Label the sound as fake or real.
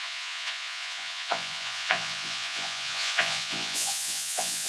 fake